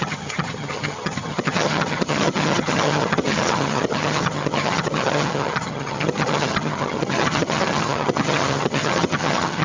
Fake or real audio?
fake